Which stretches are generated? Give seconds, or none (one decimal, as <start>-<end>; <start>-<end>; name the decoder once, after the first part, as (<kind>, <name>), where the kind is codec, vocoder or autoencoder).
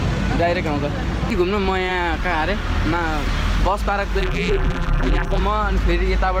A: 4.2-5.4 (vocoder, BigVGAN v2)